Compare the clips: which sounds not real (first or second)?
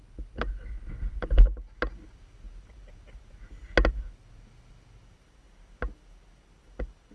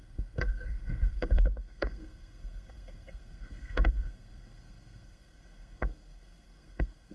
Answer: second